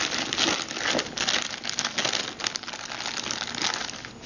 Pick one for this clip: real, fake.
real